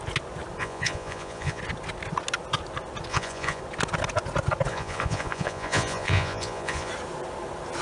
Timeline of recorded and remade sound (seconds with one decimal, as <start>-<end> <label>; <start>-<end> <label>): 0.0-0.6 recorded; 0.6-1.6 remade; 1.6-3.1 recorded; 3.1-3.6 remade; 3.6-4.7 recorded; 4.7-6.9 remade; 6.9-7.8 recorded

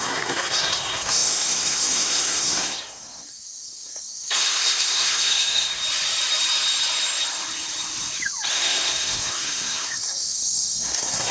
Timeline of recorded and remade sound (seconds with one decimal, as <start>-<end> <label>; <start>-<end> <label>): 0.0-5.8 remade; 5.8-8.5 recorded; 8.5-11.3 remade

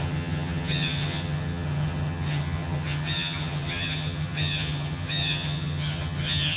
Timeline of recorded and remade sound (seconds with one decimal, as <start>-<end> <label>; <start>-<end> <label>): 0.0-6.6 remade

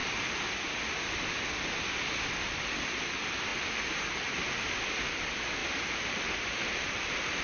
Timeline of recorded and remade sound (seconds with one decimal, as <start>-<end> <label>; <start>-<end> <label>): 0.0-3.5 recorded; 3.5-4.4 remade; 4.4-5.6 recorded; 5.6-7.4 remade